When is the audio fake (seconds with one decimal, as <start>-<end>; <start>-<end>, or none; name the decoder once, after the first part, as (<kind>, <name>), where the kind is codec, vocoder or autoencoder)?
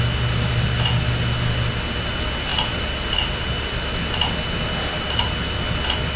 none